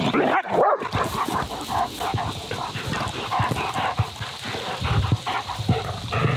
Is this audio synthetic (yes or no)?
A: no